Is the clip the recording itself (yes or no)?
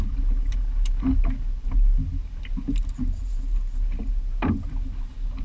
yes